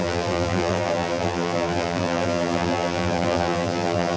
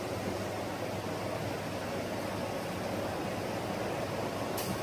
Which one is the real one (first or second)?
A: second